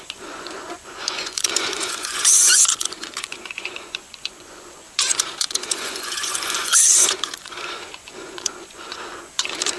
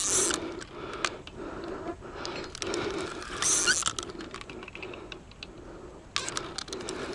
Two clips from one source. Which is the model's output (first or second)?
first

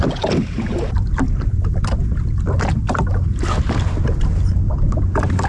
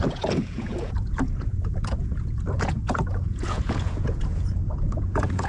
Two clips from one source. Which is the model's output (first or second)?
second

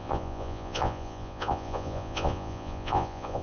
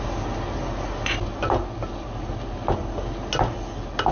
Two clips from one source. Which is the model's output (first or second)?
first